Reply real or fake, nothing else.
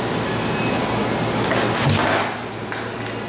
real